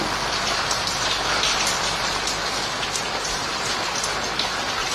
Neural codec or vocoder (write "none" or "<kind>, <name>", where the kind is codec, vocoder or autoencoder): none